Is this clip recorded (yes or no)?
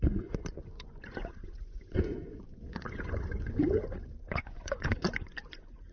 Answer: no